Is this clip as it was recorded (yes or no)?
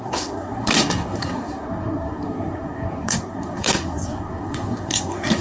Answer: no